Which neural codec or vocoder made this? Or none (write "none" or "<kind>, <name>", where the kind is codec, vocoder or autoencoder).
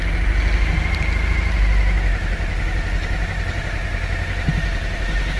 none